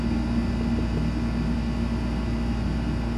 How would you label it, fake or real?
real